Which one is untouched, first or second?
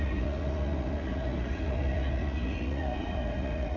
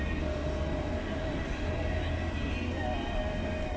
second